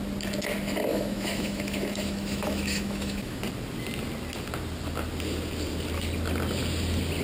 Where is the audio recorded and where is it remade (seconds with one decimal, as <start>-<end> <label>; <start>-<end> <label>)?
0.0-0.9 recorded; 0.9-3.4 remade; 3.4-7.2 recorded